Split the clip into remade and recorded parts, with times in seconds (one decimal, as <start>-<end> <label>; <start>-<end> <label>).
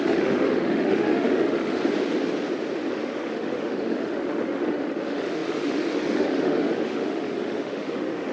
0.0-1.8 remade; 1.8-2.9 recorded; 2.9-8.3 remade